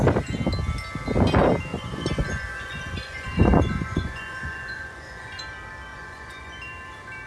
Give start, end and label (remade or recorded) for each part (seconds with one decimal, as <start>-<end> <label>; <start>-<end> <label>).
0.0-1.7 recorded; 1.7-5.4 remade; 5.4-5.9 recorded; 5.9-6.5 remade; 6.5-7.3 recorded